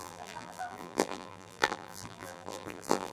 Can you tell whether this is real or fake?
fake